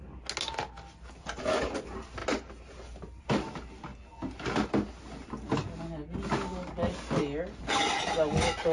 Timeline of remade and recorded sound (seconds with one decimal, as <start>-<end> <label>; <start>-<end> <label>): 0.0-8.7 recorded